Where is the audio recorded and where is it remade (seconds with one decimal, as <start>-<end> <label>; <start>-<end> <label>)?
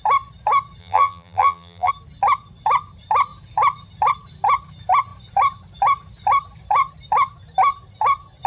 0.0-0.8 recorded; 0.8-1.9 remade; 1.9-8.5 recorded